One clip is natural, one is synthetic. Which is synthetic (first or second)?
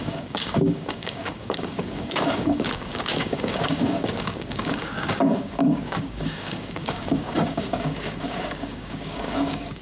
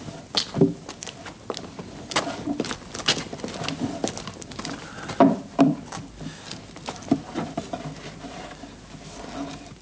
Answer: first